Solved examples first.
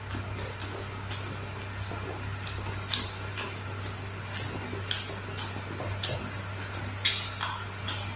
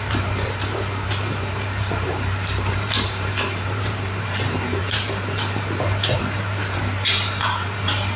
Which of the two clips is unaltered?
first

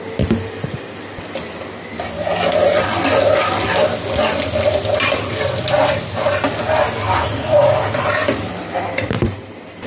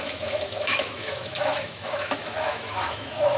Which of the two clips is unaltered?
first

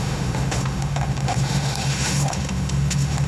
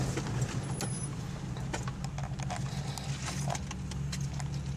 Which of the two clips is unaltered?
second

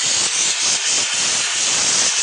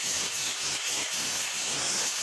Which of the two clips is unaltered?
first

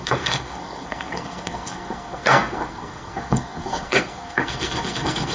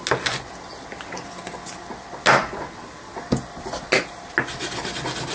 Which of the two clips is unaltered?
second